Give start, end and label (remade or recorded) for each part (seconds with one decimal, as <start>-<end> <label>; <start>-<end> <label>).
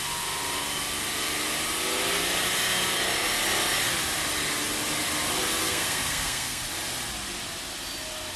0.0-5.6 recorded; 5.6-6.6 remade; 6.6-8.4 recorded